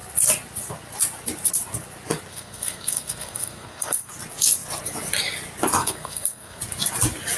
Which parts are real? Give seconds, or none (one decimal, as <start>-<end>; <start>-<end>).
0.0-2.3; 4.1-5.8; 6.6-7.4